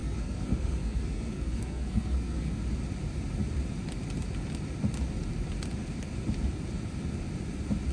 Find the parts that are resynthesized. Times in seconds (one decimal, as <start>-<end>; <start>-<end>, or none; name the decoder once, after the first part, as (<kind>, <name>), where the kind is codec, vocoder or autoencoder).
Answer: 0.0-2.6 (codec, SNAC)